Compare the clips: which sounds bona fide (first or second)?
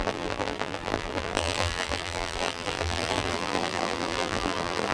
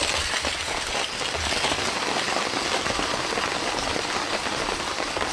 second